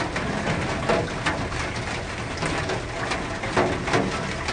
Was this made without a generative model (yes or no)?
yes